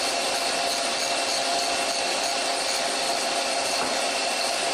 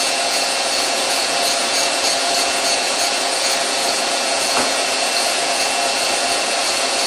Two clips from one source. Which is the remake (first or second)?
second